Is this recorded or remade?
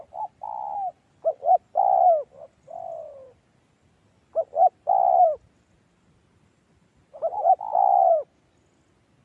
recorded